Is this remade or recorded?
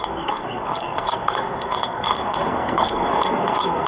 remade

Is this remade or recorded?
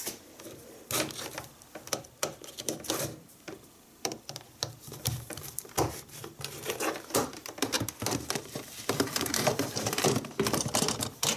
remade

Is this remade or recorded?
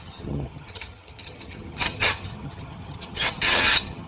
remade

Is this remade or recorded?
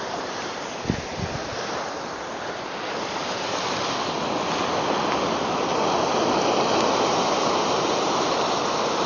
recorded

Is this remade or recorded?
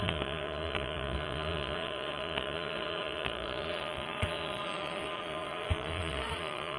remade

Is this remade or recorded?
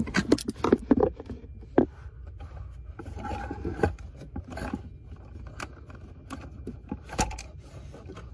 recorded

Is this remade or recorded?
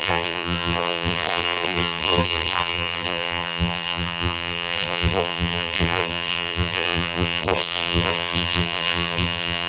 remade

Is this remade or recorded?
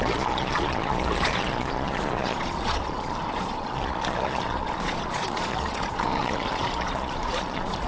remade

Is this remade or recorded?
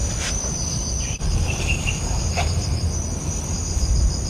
remade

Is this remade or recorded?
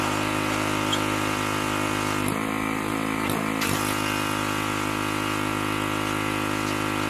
recorded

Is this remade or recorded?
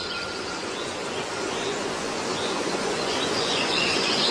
remade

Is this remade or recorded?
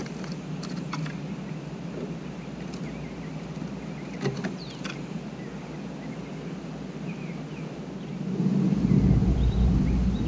recorded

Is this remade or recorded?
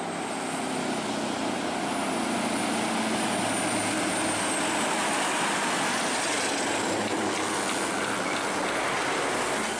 recorded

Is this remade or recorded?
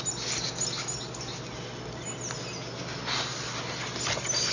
recorded